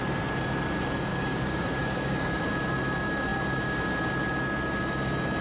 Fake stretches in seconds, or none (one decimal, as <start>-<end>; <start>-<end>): 1.1-2.4